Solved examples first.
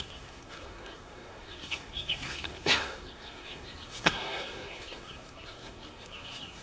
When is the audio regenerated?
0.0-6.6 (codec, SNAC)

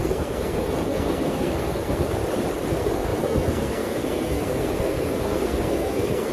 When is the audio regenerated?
0.0-2.2 (codec, SNAC); 2.7-6.3

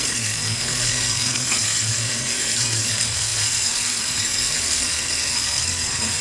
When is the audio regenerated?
0.0-6.2 (codec, SNAC)

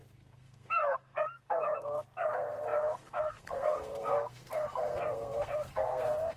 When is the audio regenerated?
0.0-6.4 (codec, SNAC)